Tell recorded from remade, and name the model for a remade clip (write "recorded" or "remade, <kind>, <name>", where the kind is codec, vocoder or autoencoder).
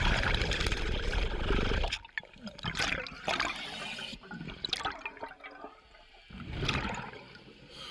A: recorded